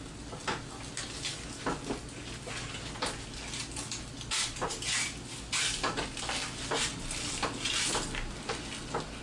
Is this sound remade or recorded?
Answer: recorded